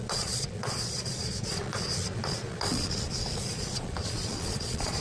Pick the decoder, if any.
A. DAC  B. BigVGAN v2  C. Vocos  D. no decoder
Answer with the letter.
C